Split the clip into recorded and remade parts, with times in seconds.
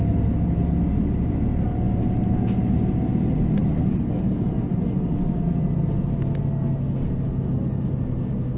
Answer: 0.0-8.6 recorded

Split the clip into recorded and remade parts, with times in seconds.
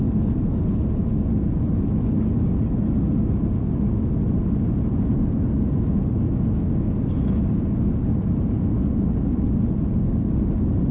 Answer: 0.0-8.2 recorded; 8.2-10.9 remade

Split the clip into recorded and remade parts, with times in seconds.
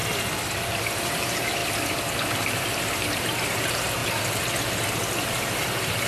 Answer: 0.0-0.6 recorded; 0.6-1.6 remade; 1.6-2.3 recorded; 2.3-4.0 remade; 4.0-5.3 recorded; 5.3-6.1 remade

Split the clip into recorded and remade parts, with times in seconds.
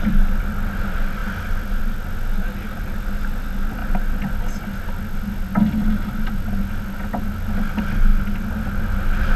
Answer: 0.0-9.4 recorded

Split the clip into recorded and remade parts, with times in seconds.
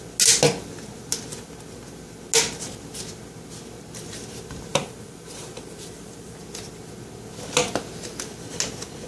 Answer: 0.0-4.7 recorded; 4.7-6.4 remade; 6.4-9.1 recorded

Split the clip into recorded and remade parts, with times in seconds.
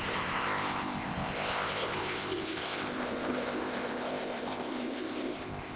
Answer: 0.0-5.8 remade